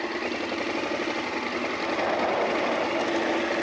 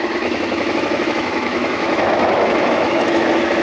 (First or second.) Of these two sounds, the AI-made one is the second